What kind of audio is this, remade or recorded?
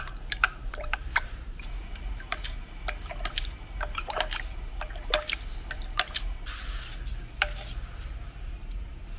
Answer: remade